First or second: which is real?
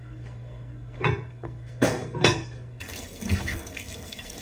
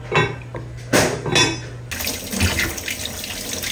second